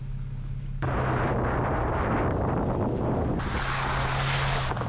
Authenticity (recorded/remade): recorded